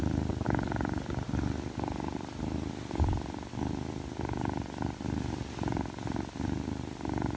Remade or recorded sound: recorded